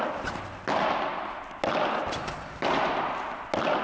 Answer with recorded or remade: recorded